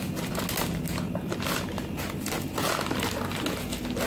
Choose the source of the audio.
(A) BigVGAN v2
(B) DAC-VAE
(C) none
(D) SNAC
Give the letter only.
C